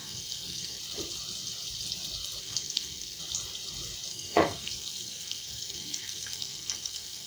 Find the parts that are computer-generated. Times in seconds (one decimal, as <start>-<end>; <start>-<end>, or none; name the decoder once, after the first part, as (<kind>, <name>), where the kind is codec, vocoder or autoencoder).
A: 0.0-0.8 (codec, SNAC); 2.4-3.2; 4.1-7.3